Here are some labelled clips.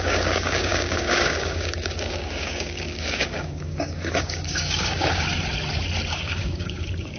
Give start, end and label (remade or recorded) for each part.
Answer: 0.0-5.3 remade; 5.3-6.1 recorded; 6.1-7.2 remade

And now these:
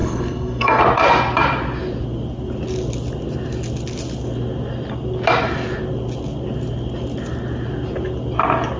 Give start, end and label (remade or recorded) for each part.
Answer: 0.0-0.8 remade; 0.8-8.8 recorded